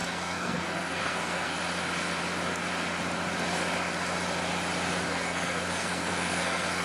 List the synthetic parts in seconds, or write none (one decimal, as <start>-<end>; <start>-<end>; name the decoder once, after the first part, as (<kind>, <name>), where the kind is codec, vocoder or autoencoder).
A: 0.0-1.6 (codec, SNAC); 5.1-6.8

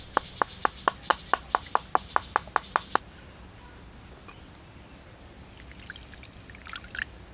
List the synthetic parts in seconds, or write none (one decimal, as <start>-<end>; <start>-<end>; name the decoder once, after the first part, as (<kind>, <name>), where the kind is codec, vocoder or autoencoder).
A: none

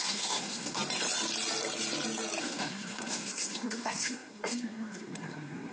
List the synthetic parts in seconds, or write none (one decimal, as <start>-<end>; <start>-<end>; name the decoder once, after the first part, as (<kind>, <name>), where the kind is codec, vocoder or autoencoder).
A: 0.0-0.8 (codec, SNAC); 2.4-5.7